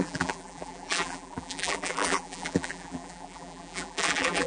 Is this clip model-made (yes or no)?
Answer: yes